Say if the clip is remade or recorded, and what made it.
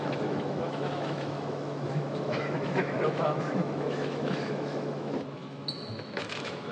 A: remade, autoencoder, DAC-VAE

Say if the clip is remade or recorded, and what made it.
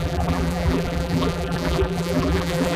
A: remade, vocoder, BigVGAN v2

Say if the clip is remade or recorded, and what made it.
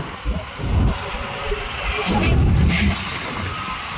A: recorded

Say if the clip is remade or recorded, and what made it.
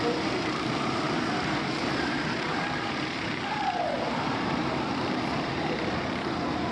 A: remade, vocoder, BigVGAN v2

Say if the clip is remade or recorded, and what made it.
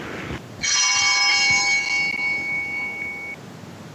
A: recorded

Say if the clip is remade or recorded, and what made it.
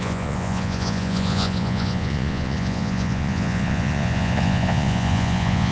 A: remade, vocoder, Vocos